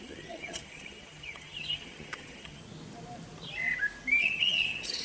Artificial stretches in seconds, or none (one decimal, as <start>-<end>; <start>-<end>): 0.0-2.6; 4.2-5.0